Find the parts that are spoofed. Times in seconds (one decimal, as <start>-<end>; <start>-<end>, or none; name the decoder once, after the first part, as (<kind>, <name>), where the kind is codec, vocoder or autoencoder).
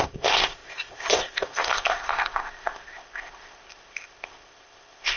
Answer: 0.0-5.2 (codec, ZipCodec)